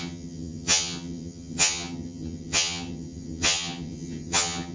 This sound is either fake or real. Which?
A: fake